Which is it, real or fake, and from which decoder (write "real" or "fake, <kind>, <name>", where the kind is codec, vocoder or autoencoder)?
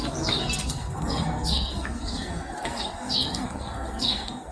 fake, codec, SNAC